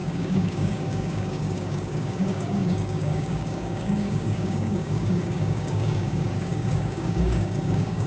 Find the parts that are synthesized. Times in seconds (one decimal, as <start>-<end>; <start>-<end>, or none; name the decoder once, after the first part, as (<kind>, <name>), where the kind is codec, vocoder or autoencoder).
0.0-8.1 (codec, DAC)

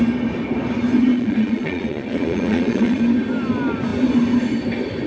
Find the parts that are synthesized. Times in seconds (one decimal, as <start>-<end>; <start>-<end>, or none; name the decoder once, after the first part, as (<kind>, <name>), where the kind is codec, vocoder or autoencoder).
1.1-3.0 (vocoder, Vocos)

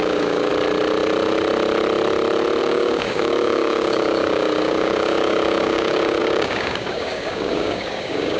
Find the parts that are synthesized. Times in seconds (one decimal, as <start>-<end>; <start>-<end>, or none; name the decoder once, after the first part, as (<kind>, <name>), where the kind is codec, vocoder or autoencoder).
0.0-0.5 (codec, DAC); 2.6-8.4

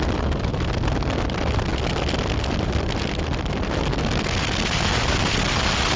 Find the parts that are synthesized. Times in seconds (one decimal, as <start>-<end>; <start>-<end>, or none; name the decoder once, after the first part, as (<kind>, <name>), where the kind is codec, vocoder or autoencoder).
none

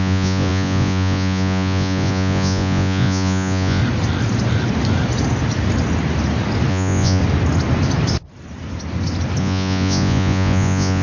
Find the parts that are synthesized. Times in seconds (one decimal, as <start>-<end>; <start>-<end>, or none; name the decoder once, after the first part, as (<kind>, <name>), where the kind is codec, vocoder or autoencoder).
0.0-3.8 (vocoder, Vocos); 6.7-7.2; 9.4-11.0

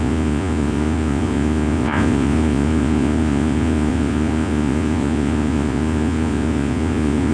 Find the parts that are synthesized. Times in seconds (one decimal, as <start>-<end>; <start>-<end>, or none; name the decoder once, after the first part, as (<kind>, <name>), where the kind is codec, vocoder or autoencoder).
0.0-7.3 (vocoder, Vocos)